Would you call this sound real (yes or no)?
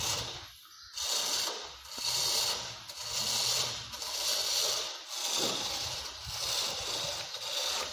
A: yes